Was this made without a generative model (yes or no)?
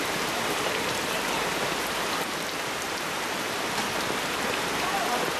no